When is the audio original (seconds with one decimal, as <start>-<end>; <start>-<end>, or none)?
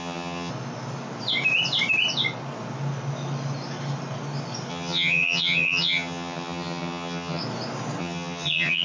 0.5-4.7; 7.4-8.0